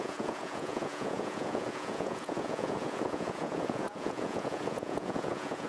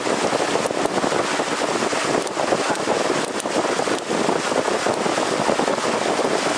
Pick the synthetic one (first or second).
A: first